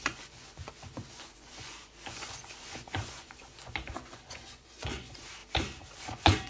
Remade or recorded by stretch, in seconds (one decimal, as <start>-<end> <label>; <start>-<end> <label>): 0.0-5.4 remade; 5.4-6.0 recorded; 6.0-6.5 remade